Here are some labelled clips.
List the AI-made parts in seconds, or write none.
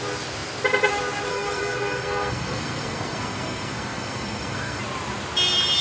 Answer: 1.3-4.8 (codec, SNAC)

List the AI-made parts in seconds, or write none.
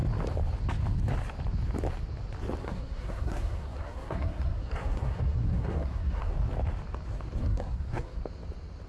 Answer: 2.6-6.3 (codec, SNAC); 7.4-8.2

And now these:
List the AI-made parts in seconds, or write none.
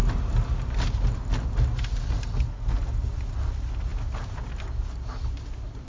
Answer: none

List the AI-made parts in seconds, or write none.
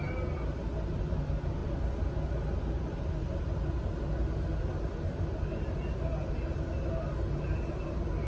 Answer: none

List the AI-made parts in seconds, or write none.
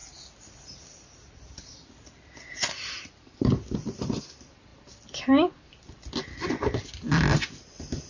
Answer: 0.0-4.2 (vocoder, BigVGAN v2); 4.7-6.5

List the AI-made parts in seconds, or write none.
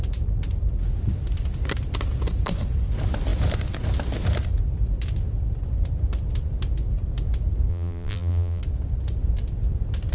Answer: 7.7-8.6 (vocoder, BigVGAN v2)